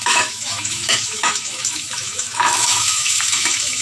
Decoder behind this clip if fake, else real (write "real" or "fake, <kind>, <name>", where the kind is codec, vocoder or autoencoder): fake, autoencoder, DAC-VAE